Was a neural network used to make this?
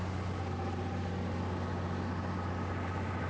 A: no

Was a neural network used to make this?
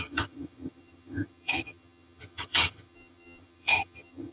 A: yes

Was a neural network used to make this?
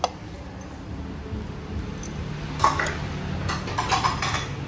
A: no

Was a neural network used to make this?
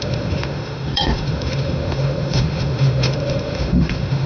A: yes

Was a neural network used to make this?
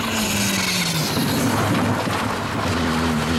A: no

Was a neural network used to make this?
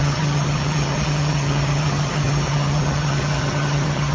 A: yes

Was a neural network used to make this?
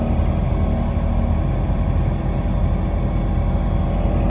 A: no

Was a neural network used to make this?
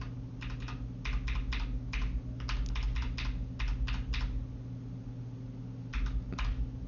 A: no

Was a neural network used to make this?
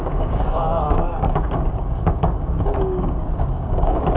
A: yes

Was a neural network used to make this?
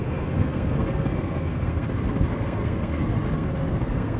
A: yes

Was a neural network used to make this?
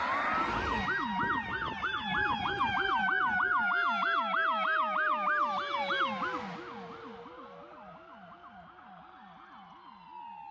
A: no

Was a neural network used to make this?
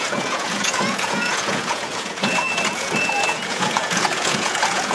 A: yes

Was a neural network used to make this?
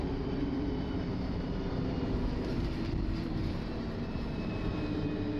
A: yes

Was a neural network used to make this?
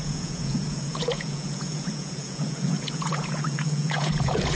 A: yes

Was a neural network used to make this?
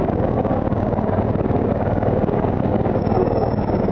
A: yes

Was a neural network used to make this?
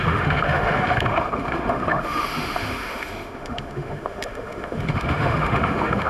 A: yes